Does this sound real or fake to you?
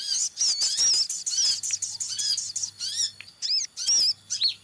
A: real